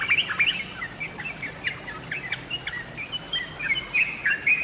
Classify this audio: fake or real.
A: real